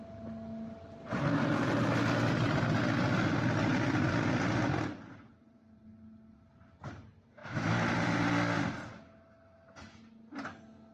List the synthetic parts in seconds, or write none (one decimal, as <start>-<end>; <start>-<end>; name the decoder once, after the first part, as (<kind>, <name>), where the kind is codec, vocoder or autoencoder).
7.4-7.9 (autoencoder, DAC-VAE)